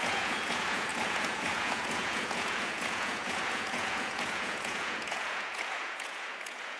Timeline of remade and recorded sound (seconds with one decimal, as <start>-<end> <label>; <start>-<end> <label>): 0.0-6.8 remade